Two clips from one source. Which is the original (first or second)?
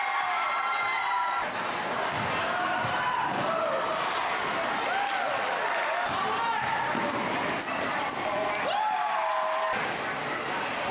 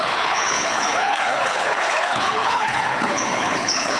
first